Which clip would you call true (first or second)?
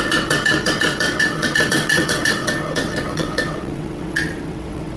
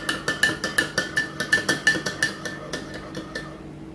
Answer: second